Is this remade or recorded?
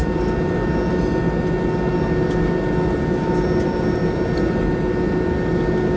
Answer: recorded